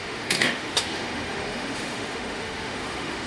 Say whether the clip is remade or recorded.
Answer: remade